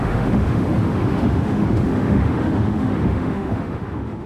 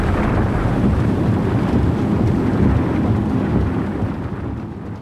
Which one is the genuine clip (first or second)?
second